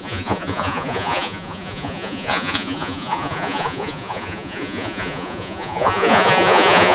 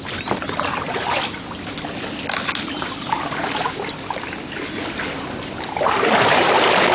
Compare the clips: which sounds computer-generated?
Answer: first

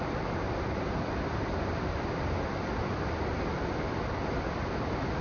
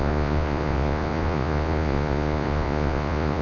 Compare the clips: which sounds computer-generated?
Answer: second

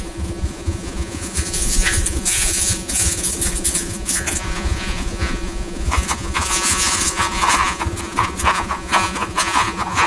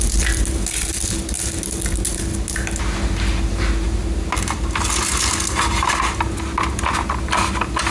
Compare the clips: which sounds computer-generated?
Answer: first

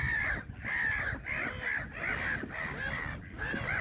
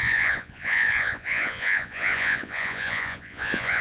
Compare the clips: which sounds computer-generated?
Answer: second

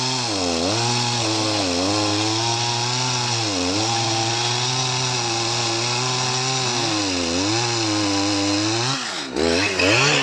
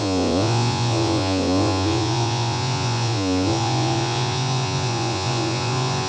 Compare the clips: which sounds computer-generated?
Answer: second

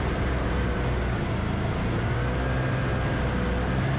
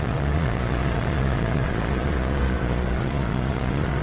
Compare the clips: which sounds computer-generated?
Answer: second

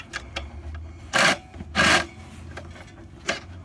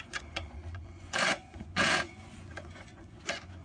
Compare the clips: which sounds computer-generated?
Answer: second